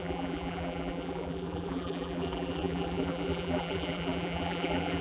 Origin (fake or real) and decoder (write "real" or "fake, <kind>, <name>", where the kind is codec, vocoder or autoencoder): fake, vocoder, BigVGAN v2